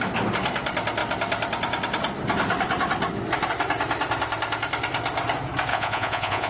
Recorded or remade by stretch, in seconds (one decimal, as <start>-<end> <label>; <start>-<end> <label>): 0.0-5.7 recorded; 5.7-6.5 remade